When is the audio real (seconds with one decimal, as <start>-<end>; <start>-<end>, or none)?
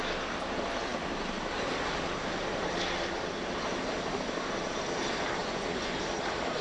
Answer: 0.0-5.4; 6.0-6.6